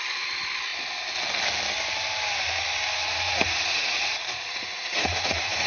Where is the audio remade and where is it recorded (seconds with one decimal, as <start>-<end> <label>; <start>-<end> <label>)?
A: 0.0-3.0 recorded; 3.0-5.7 remade